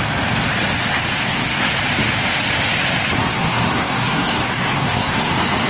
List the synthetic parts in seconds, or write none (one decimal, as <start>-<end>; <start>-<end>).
1.2-1.7; 3.3-5.3